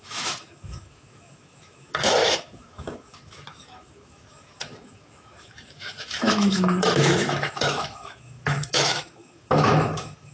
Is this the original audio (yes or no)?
no